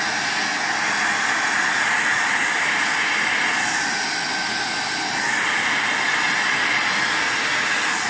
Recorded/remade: recorded